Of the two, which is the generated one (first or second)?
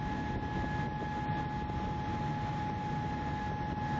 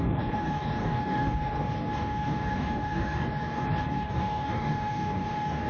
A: second